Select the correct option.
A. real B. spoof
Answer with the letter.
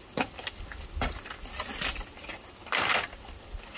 A